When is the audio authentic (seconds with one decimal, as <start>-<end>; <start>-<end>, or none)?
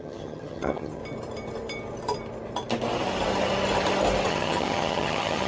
1.0-4.3